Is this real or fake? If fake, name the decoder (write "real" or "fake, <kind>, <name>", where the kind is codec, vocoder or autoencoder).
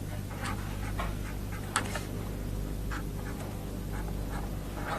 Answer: real